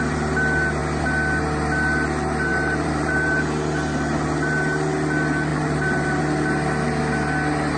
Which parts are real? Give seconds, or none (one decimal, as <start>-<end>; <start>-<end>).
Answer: 0.0-2.5; 3.4-5.5; 6.2-7.8